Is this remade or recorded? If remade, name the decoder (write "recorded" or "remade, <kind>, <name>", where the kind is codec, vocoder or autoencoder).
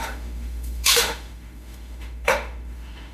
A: remade, autoencoder, DAC-VAE